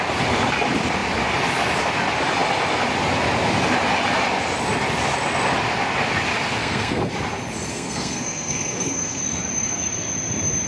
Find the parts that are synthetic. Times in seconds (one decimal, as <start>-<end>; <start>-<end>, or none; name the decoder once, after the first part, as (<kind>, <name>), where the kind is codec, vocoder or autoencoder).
6.6-7.1 (codec, SNAC); 7.7-9.2

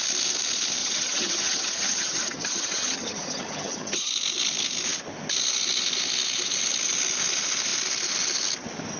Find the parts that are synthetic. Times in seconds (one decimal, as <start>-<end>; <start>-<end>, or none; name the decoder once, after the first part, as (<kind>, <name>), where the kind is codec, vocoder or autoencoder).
0.8-4.1 (vocoder, HiFi-GAN)